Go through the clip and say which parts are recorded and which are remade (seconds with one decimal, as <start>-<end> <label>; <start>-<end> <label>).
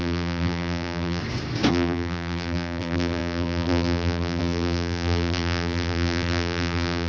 0.0-1.2 remade; 1.2-1.7 recorded; 1.7-7.1 remade